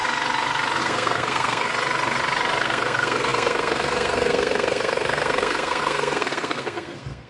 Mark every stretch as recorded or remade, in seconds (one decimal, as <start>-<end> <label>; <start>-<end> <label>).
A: 0.0-0.8 recorded; 0.8-1.7 remade; 1.7-2.6 recorded; 2.6-7.3 remade